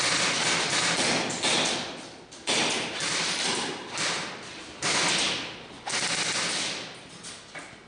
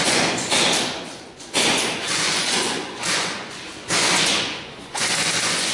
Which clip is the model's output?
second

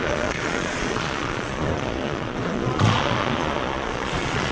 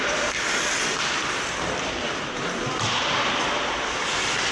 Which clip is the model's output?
first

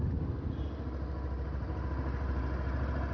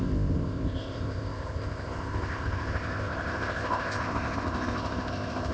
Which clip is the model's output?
second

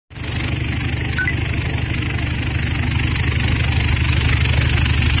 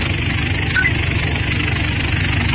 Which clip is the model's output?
second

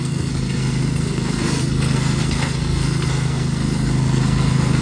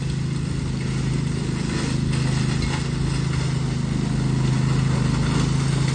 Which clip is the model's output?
first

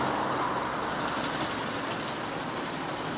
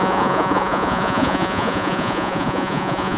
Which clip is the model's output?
second